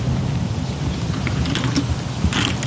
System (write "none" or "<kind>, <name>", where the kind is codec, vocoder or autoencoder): none